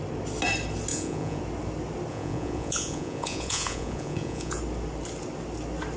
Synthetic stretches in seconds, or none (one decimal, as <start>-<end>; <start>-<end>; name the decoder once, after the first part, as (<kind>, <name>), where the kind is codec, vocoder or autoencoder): 0.9-1.4 (vocoder, Vocos); 2.1-4.6